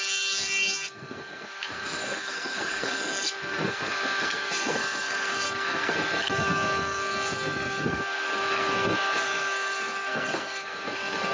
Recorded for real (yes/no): no